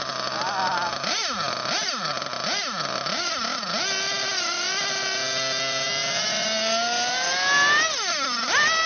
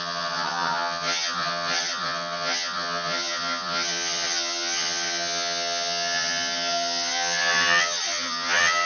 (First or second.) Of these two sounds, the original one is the first